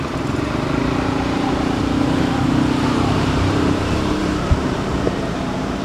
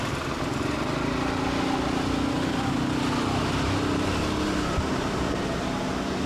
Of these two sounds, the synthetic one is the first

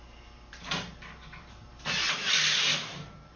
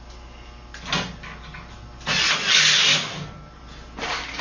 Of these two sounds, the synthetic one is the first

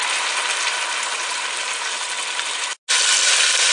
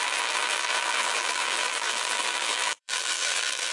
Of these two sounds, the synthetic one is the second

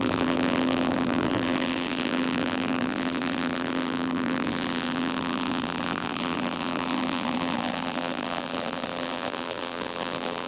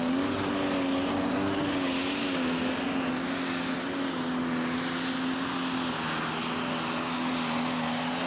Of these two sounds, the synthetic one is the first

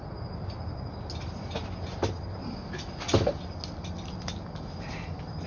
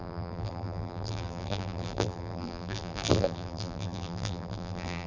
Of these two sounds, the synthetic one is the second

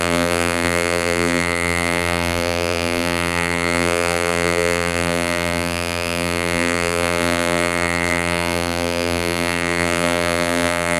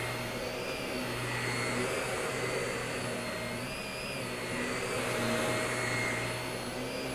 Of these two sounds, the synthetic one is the first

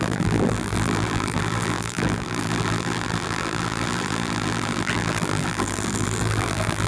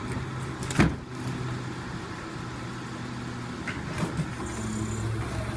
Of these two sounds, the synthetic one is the first